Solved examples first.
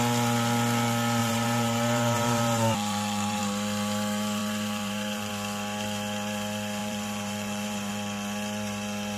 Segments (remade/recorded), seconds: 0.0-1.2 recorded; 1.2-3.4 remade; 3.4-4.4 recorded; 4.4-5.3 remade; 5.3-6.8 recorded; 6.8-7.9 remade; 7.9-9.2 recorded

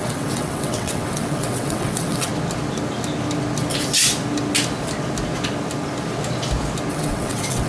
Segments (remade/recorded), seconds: 0.0-2.3 remade; 2.3-6.9 recorded; 6.9-7.7 remade